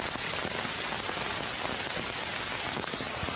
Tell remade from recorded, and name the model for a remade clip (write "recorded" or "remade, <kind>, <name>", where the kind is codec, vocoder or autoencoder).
recorded